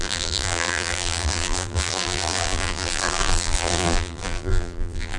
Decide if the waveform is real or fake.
fake